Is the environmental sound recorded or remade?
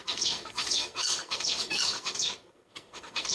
remade